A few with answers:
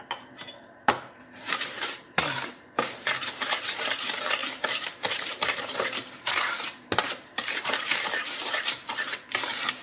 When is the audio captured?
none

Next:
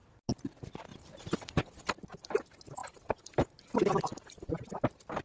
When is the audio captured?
0.0-0.9; 1.9-2.8; 3.5-4.1; 4.6-5.2